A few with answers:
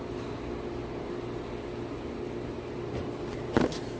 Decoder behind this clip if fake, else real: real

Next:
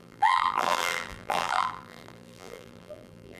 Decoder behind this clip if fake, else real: fake, vocoder, BigVGAN v2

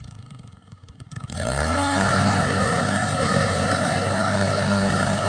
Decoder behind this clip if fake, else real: fake, codec, SNAC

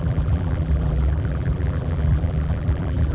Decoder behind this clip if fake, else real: fake, vocoder, BigVGAN v2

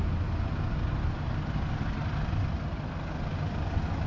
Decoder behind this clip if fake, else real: real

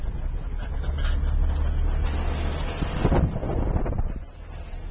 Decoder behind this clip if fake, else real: real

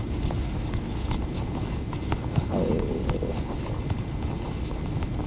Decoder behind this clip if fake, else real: real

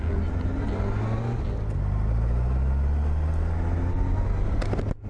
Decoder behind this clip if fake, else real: real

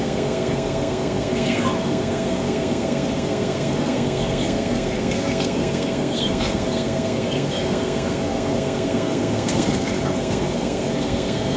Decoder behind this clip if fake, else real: fake, codec, SNAC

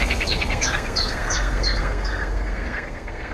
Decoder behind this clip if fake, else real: fake, codec, SNAC